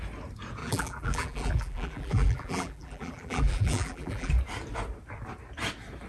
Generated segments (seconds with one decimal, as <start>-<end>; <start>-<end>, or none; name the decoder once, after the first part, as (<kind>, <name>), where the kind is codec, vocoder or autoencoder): 0.6-4.3 (vocoder, BigVGAN v2)